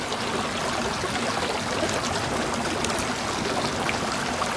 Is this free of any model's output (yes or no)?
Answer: yes